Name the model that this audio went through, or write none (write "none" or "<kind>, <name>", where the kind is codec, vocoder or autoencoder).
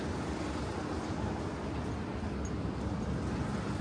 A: none